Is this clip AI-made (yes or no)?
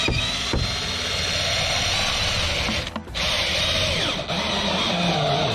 no